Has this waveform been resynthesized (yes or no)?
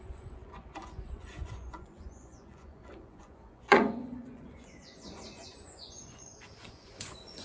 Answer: yes